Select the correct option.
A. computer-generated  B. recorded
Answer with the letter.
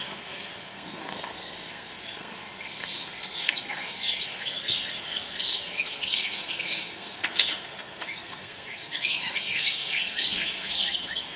A